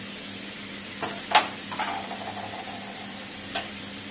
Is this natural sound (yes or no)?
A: yes